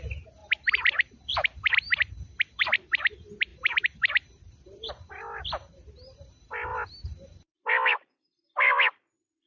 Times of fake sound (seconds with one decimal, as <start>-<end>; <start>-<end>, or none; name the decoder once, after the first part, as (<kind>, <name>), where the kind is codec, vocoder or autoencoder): 0.0-9.5 (vocoder, BigVGAN v2)